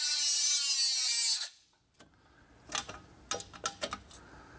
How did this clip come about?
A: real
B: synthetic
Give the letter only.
A